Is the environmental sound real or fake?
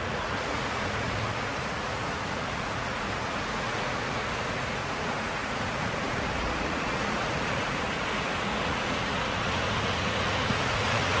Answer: fake